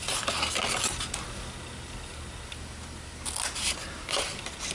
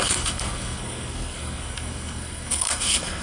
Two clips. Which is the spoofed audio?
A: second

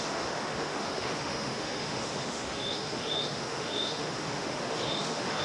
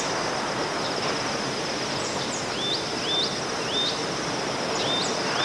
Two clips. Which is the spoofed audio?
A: first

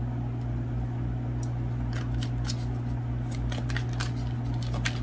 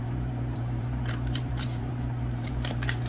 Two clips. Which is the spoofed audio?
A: second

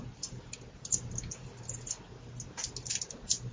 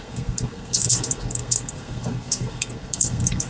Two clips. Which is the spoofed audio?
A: second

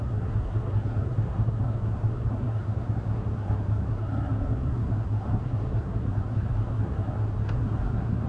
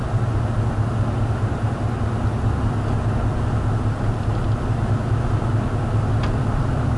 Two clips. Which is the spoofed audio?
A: first